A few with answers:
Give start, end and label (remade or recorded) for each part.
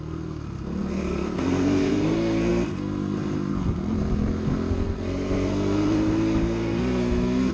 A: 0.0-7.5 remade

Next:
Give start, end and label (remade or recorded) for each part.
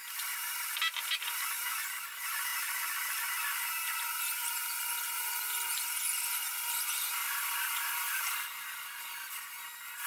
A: 0.0-10.1 recorded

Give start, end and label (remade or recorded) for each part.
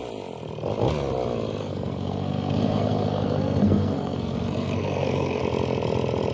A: 0.0-1.6 recorded; 1.6-5.4 remade; 5.4-6.3 recorded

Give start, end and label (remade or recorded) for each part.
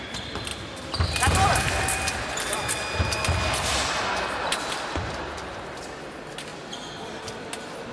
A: 0.0-7.9 recorded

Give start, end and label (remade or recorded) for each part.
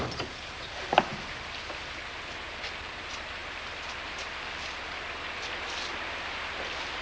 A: 0.0-7.0 recorded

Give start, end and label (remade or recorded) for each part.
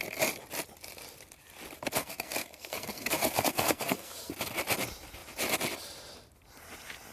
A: 0.0-2.0 recorded; 2.0-4.3 remade; 4.3-7.1 recorded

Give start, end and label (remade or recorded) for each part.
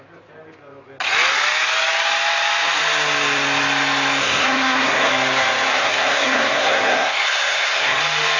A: 0.0-4.2 recorded; 4.2-5.1 remade; 5.1-5.7 recorded; 5.7-8.0 remade; 8.0-8.4 recorded